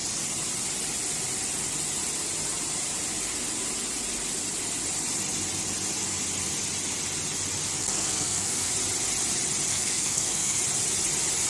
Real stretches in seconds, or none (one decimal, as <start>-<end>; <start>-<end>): 0.0-7.8; 8.7-9.7; 10.6-11.5